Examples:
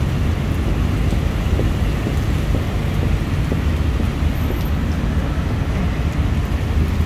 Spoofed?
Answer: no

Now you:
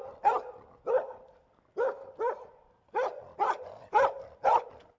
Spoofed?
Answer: no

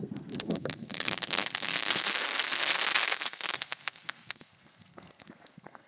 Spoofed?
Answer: yes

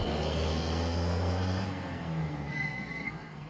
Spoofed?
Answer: yes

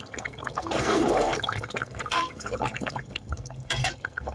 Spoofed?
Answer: yes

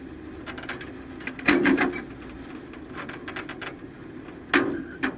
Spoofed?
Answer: no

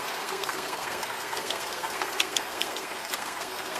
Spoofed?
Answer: yes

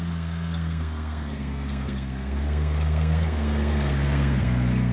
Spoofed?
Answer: yes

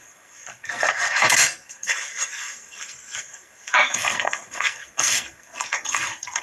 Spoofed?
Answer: yes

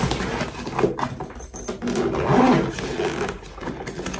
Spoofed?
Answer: no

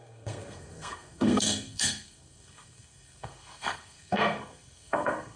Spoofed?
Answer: yes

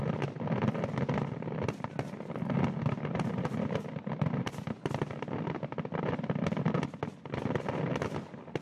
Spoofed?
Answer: no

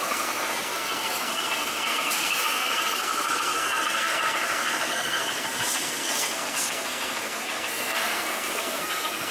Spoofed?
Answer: yes